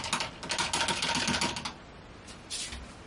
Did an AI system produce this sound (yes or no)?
no